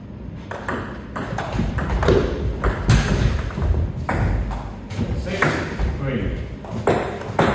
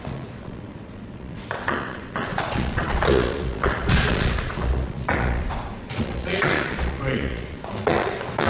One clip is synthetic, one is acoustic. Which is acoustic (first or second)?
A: first